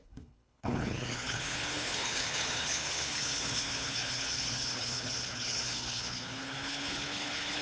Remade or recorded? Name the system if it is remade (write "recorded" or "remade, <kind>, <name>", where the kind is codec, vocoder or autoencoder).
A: remade, codec, HILCodec